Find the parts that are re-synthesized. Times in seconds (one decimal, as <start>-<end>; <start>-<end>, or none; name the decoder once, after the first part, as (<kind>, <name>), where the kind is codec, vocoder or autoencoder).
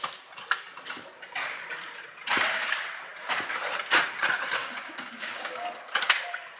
4.6-5.9 (codec, DAC)